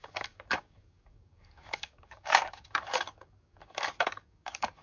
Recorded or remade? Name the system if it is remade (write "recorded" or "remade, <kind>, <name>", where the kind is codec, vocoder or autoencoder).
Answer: remade, codec, DAC